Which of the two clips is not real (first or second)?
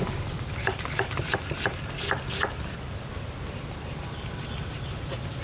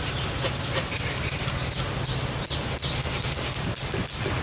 first